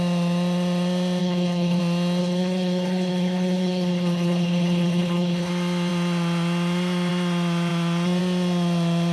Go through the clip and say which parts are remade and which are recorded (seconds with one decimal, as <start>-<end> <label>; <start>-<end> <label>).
0.0-1.2 recorded; 1.2-1.8 remade; 1.8-2.2 recorded; 2.2-5.5 remade; 5.5-9.1 recorded